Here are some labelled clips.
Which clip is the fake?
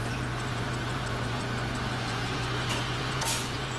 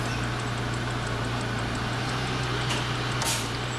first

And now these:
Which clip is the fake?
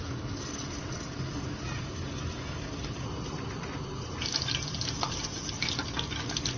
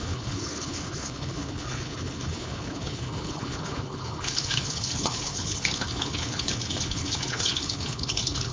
second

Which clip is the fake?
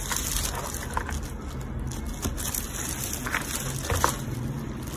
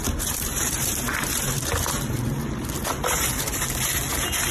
second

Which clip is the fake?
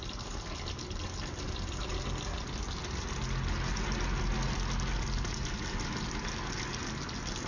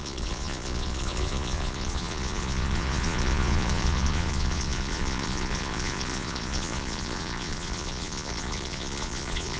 second